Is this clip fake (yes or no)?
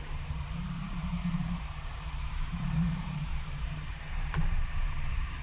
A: yes